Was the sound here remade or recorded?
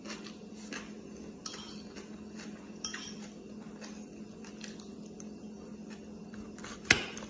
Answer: recorded